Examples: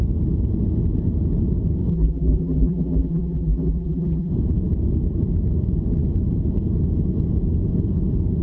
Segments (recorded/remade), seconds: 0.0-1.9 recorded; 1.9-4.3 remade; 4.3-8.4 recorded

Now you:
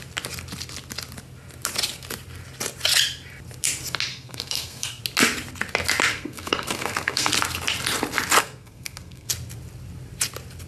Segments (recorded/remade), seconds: 0.0-4.1 recorded; 4.1-5.0 remade; 5.0-6.1 recorded; 6.1-7.3 remade; 7.3-8.4 recorded; 8.4-9.3 remade; 9.3-10.7 recorded

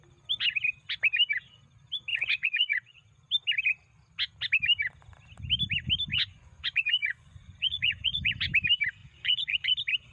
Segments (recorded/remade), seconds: 0.0-2.1 recorded; 2.1-3.3 remade; 3.3-6.1 recorded; 6.1-8.3 remade; 8.3-9.0 recorded; 9.0-9.6 remade; 9.6-10.1 recorded

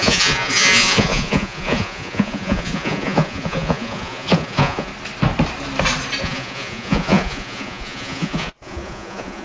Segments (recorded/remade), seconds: 0.0-4.9 remade; 4.9-6.2 recorded; 6.2-9.4 remade